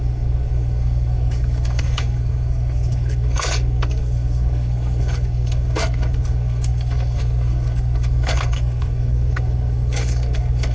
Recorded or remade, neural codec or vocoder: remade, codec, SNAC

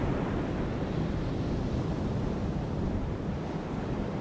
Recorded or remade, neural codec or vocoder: recorded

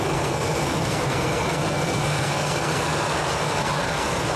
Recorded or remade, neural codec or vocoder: remade, codec, SNAC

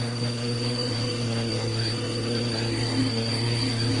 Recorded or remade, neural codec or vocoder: remade, codec, SNAC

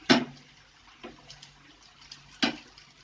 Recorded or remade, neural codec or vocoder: recorded